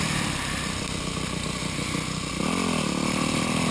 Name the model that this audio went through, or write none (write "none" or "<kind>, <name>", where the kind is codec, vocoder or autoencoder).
none